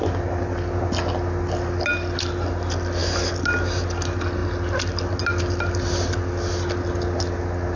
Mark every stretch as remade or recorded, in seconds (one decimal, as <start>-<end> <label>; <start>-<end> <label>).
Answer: 0.0-7.8 recorded